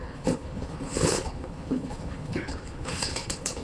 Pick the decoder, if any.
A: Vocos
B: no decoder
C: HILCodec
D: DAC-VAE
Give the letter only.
C